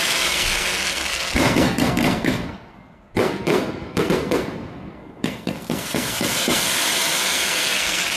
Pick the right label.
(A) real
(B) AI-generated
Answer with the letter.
B